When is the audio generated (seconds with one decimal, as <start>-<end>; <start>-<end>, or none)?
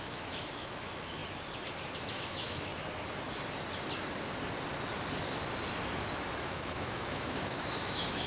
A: 0.0-1.2; 2.1-2.7; 6.4-8.3